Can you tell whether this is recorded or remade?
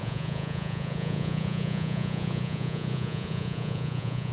remade